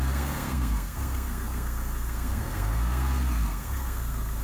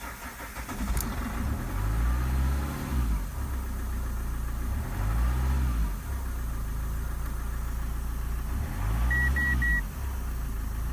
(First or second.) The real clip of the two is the second